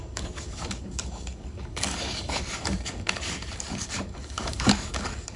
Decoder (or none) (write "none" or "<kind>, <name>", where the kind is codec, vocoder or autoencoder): codec, DAC